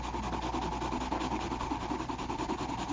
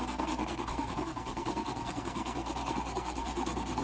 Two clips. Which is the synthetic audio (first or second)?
second